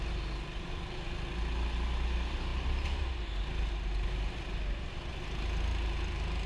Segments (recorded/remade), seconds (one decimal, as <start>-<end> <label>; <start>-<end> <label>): 0.0-6.5 recorded